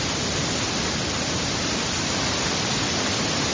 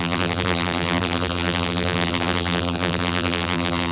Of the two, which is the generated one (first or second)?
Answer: second